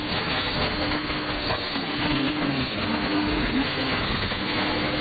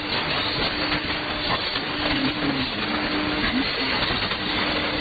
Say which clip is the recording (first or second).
second